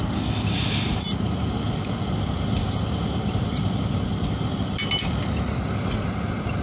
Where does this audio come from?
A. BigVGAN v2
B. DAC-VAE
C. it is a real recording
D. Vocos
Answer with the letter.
C